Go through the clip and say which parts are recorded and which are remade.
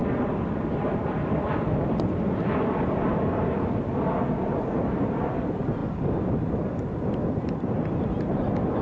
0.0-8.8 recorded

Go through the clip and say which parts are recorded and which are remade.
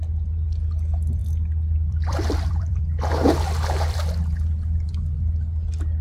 0.0-1.2 recorded; 1.2-2.8 remade; 2.8-6.0 recorded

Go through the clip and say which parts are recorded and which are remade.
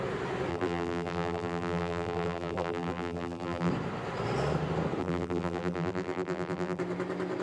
0.0-0.5 recorded; 0.5-3.7 remade; 3.7-5.0 recorded; 5.0-6.8 remade; 6.8-7.4 recorded